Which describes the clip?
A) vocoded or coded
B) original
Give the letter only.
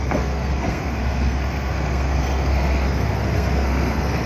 A